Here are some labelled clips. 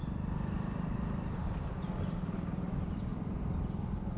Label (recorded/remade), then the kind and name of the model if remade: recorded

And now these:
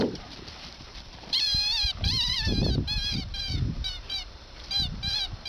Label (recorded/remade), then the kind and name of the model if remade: remade, vocoder, BigVGAN v2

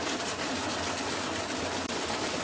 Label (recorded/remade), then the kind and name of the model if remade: recorded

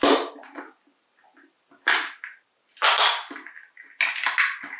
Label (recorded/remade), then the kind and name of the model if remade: recorded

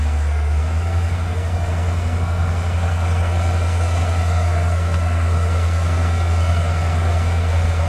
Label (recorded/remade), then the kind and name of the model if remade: remade, codec, SNAC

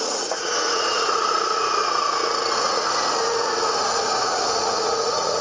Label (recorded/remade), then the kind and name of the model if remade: remade, vocoder, Vocos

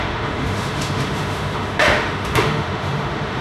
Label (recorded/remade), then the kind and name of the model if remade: remade, autoencoder, DAC-VAE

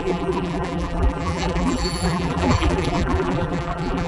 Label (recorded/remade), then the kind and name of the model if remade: remade, vocoder, BigVGAN v2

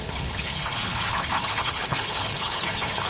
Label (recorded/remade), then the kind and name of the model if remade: remade, codec, HILCodec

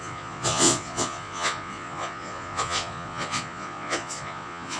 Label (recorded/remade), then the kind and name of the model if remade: remade, vocoder, Vocos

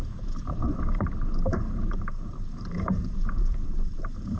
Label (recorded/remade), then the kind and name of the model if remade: remade, vocoder, BigVGAN v2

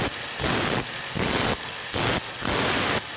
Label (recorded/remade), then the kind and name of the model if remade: recorded